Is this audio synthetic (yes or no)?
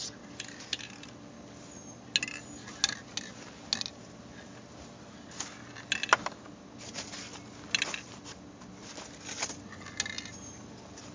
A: no